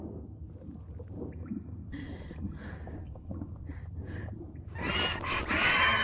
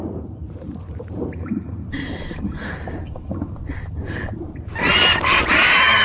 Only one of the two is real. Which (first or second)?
first